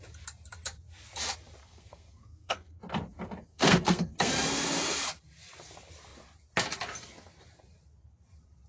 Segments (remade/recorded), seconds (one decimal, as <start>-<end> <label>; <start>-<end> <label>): 0.0-1.6 recorded; 1.6-2.7 remade; 2.7-3.5 recorded; 3.5-4.3 remade; 4.3-8.7 recorded

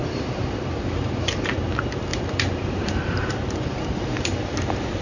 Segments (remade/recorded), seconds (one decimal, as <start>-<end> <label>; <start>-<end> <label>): 0.0-1.6 remade; 1.6-2.1 recorded; 2.1-5.0 remade

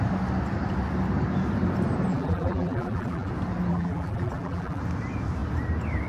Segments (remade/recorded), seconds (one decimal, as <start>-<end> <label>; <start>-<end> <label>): 0.0-2.1 recorded; 2.1-3.3 remade; 3.3-3.7 recorded; 3.7-4.8 remade; 4.8-6.1 recorded